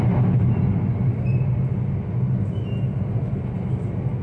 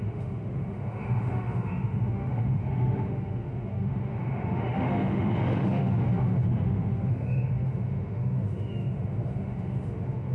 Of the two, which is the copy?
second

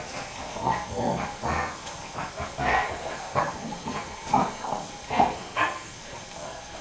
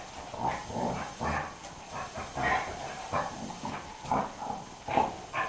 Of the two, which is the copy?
first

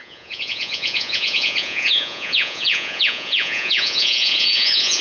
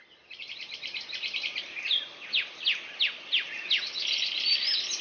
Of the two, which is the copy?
first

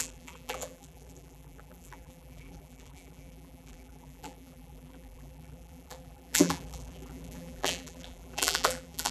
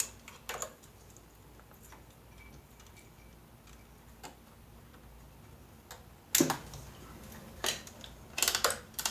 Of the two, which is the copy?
first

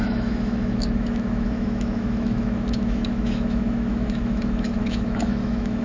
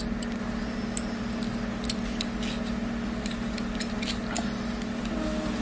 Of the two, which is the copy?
first